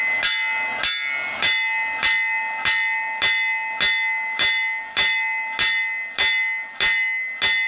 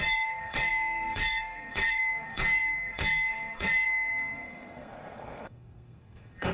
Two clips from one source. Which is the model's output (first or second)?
second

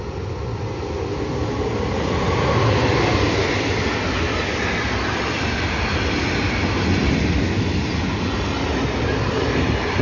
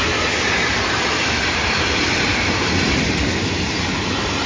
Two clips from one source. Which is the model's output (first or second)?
second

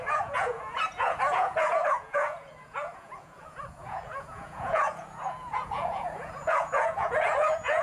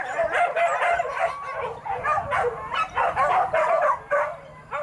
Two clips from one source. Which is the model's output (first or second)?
first